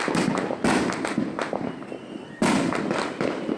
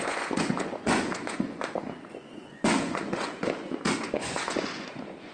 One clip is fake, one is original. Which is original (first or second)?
first